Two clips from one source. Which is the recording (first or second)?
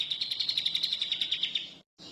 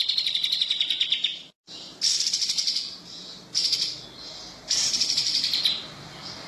first